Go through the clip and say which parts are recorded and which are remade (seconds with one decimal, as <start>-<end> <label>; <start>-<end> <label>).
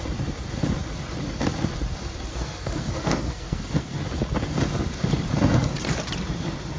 0.0-2.3 recorded; 2.3-4.0 remade; 4.0-6.8 recorded